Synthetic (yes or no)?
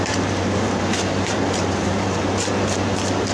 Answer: yes